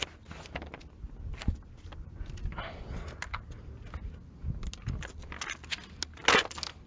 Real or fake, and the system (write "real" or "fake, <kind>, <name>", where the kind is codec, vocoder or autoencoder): real